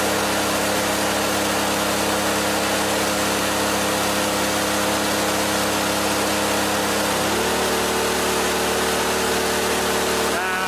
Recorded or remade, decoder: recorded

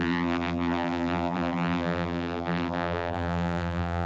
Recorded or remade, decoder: remade, vocoder, BigVGAN v2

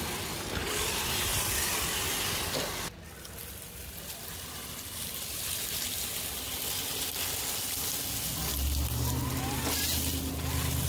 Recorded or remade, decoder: recorded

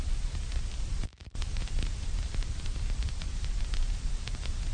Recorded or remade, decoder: remade, vocoder, BigVGAN v2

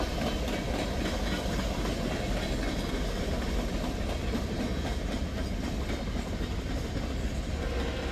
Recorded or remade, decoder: recorded